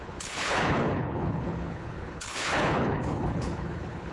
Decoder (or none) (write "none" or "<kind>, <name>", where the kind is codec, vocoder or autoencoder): codec, HILCodec